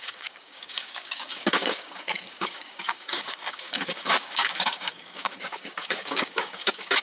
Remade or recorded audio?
remade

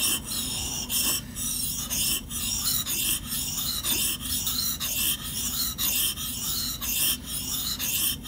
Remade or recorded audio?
recorded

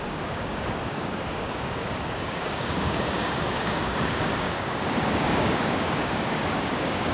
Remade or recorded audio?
remade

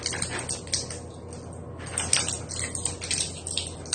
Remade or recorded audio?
recorded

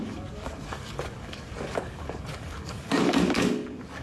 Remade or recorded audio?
remade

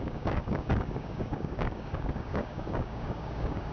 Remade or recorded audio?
remade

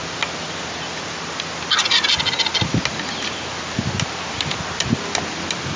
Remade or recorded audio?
recorded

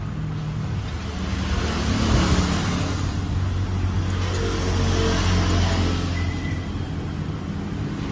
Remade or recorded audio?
recorded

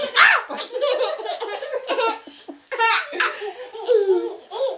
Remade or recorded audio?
recorded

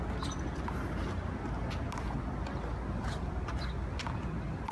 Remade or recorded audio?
recorded